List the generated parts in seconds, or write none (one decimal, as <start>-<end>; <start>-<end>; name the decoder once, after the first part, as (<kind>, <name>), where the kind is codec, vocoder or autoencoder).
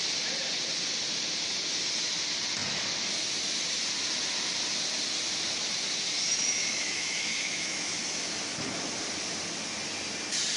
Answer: 6.4-8.0 (autoencoder, DAC-VAE)